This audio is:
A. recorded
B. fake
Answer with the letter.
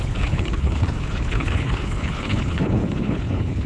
B